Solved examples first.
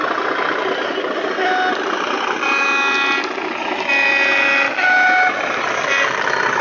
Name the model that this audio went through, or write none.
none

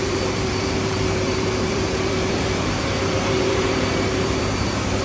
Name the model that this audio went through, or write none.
vocoder, BigVGAN v2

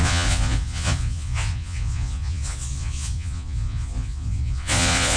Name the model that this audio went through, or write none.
vocoder, Vocos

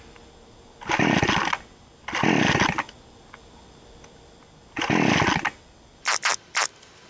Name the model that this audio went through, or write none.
none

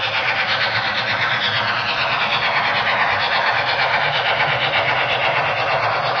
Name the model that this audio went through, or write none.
none